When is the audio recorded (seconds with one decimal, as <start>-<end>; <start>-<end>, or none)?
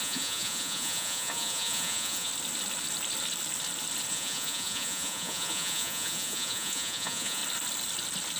2.3-4.1; 7.4-8.4